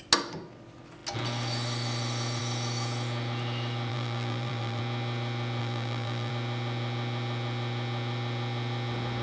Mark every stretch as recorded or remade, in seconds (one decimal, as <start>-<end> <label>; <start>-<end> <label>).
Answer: 0.0-3.9 recorded; 3.9-4.8 remade; 4.8-5.6 recorded; 5.6-6.3 remade; 6.3-9.2 recorded